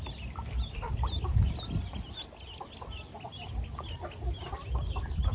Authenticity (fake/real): real